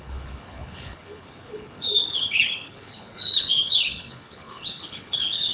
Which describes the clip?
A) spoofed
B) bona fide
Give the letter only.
A